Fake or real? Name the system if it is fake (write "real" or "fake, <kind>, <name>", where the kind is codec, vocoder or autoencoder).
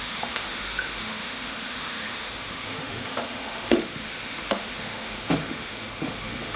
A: fake, autoencoder, DAC-VAE